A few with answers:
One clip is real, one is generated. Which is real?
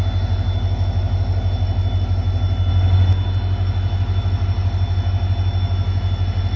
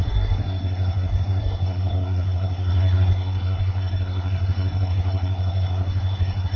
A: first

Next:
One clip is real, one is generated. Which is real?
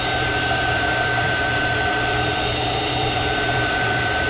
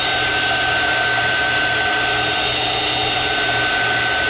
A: second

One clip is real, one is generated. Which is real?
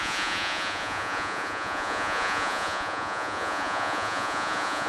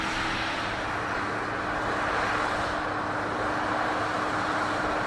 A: second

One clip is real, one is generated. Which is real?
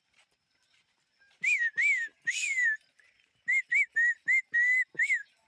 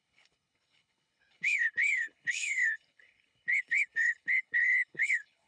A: first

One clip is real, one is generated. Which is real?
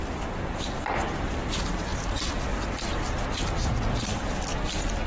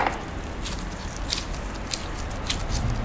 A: second